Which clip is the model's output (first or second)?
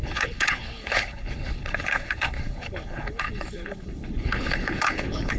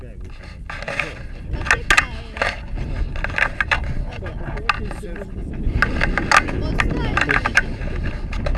first